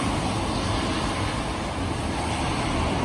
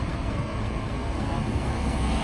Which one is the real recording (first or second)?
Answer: first